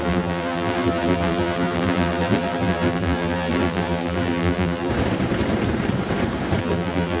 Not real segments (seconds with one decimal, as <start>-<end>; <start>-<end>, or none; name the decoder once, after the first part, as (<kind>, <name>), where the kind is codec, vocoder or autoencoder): 0.0-4.9 (vocoder, BigVGAN v2); 6.6-7.2